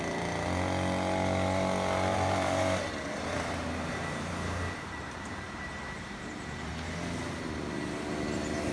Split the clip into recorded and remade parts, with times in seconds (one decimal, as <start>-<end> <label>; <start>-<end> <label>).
0.0-2.1 recorded; 2.1-6.7 remade; 6.7-8.7 recorded